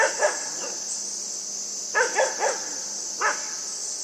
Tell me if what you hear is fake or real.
real